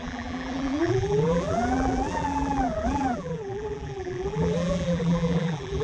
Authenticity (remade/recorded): remade